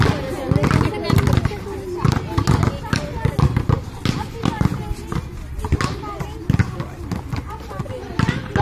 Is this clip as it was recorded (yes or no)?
yes